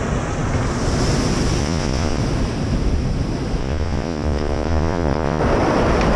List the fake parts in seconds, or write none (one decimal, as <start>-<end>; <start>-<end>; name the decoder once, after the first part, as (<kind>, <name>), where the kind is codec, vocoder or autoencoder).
1.6-2.2 (vocoder, Vocos); 3.6-5.4